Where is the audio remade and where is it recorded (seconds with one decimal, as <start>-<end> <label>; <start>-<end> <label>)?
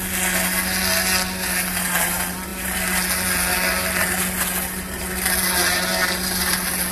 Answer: 0.0-6.9 recorded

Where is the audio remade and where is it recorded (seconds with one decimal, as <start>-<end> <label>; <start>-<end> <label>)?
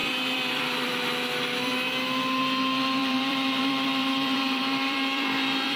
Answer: 0.0-0.9 remade; 0.9-3.0 recorded; 3.0-5.8 remade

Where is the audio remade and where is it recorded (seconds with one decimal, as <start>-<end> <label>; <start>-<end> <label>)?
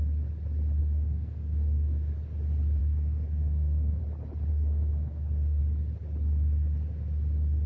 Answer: 0.0-0.8 recorded; 0.8-2.1 remade; 2.1-2.8 recorded; 2.8-4.0 remade; 4.0-4.5 recorded; 4.5-5.6 remade; 5.6-7.7 recorded